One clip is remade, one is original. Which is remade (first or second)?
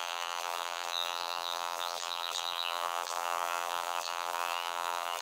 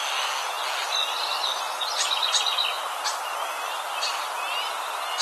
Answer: first